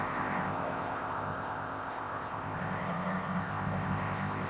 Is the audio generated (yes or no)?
yes